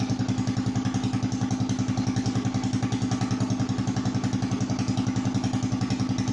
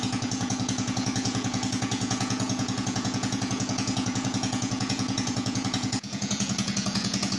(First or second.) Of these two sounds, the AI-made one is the second